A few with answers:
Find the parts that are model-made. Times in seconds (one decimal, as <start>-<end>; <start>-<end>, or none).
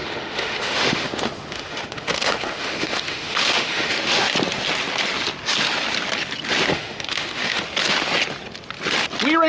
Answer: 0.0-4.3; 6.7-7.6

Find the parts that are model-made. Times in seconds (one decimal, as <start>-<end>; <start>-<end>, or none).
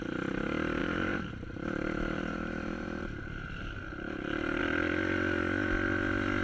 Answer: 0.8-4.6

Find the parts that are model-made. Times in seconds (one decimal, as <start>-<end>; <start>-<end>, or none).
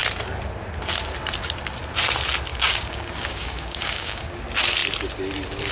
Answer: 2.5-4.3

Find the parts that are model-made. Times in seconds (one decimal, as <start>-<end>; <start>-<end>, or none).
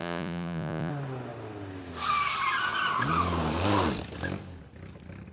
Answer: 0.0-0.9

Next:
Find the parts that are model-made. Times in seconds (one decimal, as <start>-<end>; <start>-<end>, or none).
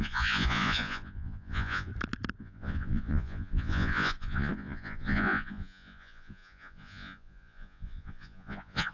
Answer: 0.0-1.9; 2.4-8.9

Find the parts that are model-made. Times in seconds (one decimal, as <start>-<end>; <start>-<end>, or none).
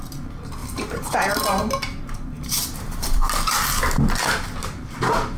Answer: 0.6-3.8; 4.6-5.4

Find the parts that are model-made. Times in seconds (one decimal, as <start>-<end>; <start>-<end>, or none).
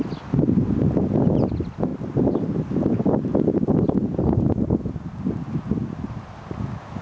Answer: none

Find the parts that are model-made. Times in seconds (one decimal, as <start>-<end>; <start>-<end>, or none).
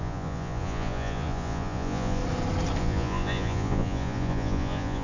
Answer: 0.0-2.2; 2.8-5.0